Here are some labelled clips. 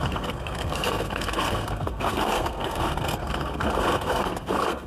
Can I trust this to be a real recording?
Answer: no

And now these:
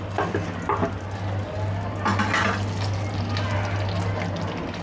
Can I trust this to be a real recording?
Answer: yes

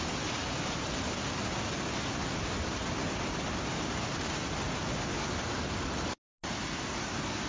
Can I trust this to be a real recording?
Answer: yes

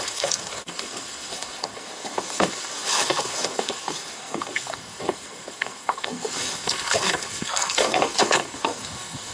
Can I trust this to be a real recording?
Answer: no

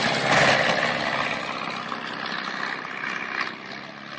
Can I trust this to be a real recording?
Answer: yes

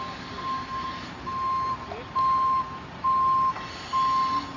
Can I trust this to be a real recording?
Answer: yes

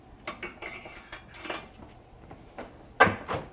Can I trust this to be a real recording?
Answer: yes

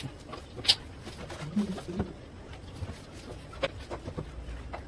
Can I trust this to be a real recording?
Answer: yes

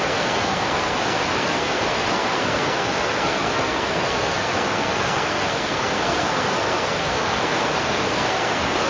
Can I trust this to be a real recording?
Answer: no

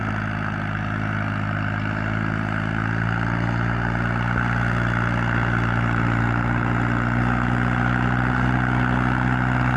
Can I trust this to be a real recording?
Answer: yes